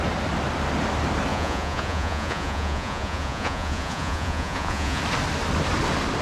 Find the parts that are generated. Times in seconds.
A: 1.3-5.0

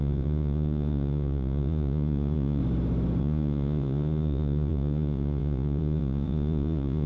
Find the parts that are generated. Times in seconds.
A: 0.0-2.6; 3.2-7.1

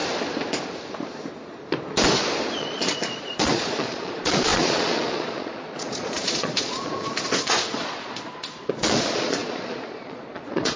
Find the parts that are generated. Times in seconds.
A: 2.6-10.8

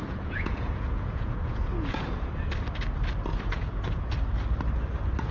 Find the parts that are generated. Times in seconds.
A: 0.0-2.3; 3.3-4.1